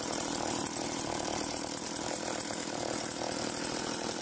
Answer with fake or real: fake